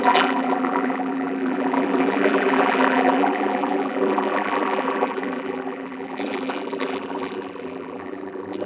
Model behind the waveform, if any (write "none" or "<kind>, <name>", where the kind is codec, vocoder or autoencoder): vocoder, BigVGAN v2